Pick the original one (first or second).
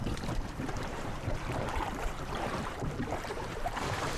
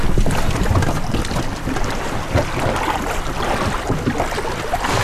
second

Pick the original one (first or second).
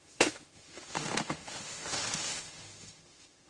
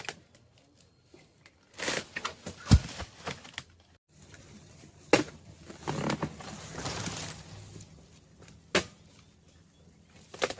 second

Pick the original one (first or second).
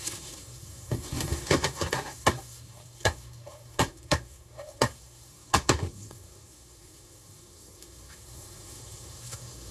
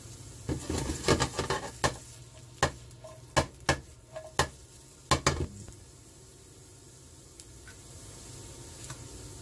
second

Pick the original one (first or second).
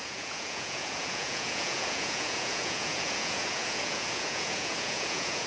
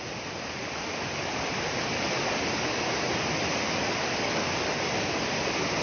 second